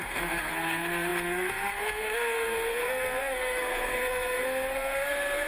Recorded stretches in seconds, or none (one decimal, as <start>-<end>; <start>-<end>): none